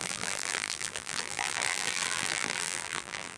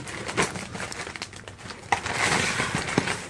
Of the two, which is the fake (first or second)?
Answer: first